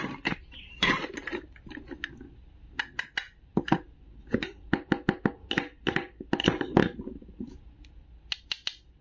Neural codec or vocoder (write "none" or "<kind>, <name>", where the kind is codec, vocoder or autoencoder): none